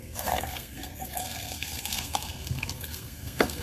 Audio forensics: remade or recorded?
remade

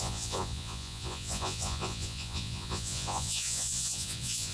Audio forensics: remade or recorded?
remade